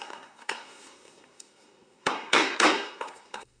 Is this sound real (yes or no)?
no